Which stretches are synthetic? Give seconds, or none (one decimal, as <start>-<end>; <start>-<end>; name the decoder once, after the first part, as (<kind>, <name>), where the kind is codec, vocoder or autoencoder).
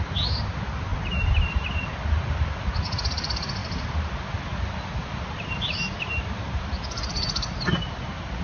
0.0-0.9 (vocoder, BigVGAN v2); 1.5-8.4